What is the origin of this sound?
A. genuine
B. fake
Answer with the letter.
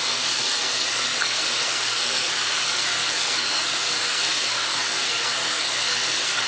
B